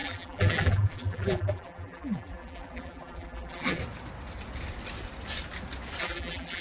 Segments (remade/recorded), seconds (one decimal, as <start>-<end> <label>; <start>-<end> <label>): 0.0-3.8 remade; 3.8-6.0 recorded; 6.0-6.6 remade